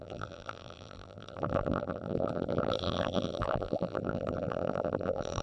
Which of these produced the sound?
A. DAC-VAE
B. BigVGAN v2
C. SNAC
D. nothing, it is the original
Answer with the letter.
B